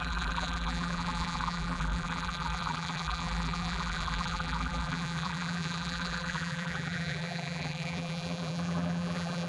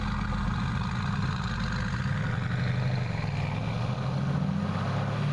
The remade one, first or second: first